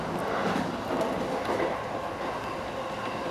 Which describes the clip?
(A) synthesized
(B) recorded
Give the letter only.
B